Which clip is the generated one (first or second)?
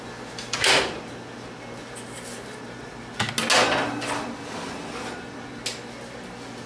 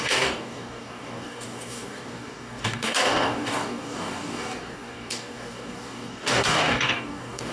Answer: second